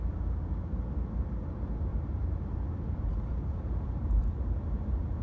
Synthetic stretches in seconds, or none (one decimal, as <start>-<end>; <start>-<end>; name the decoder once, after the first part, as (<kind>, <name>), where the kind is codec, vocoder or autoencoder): 1.9-5.2 (vocoder, BigVGAN v2)